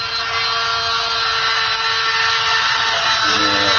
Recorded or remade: recorded